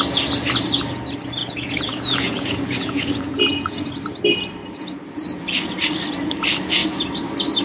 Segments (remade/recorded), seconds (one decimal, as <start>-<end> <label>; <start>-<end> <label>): 0.0-1.4 recorded; 1.4-3.9 remade; 3.9-7.6 recorded